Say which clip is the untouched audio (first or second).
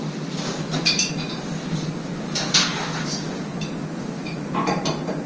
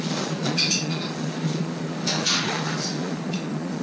first